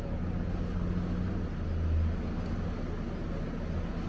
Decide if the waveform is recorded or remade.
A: recorded